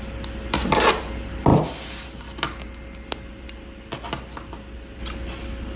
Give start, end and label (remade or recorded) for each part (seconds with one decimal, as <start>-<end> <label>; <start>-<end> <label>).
0.0-5.8 recorded